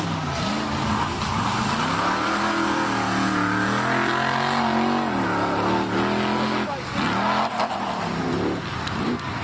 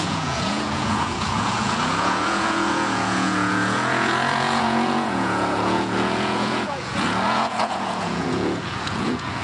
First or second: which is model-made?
second